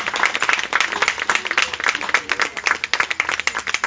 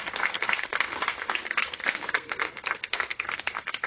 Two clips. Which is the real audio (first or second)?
first